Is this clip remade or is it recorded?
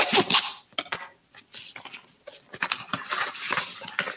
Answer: recorded